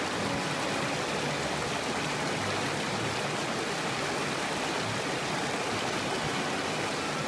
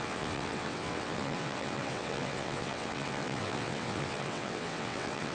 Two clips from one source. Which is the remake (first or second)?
second